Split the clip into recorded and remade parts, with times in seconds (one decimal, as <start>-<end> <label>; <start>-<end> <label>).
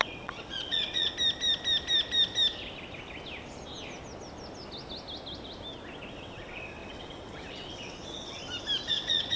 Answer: 0.0-1.1 remade; 1.1-6.1 recorded; 6.1-8.4 remade; 8.4-8.9 recorded; 8.9-9.4 remade